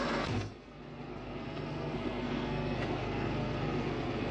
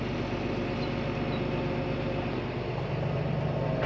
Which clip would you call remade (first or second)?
first